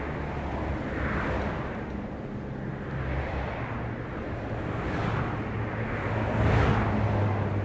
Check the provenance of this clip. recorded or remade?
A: recorded